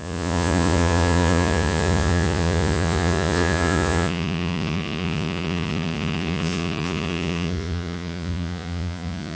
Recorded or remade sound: remade